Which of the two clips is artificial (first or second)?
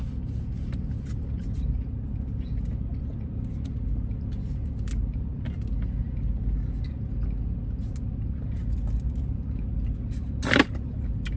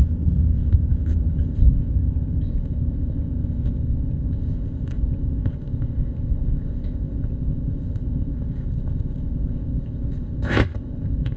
second